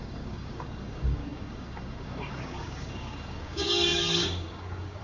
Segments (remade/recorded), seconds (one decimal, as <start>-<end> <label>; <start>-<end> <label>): 0.0-5.0 remade